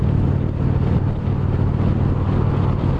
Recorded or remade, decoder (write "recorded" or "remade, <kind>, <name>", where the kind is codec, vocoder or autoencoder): recorded